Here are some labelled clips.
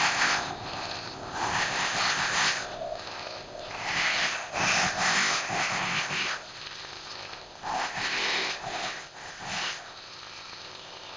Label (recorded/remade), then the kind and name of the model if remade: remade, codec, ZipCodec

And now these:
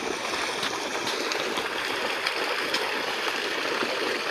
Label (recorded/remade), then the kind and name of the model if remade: recorded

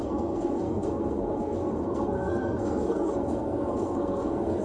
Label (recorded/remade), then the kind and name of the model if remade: remade, codec, SNAC